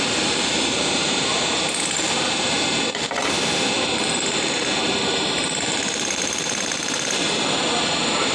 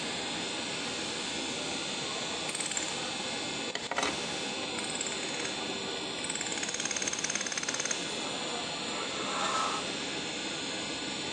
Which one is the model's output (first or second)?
first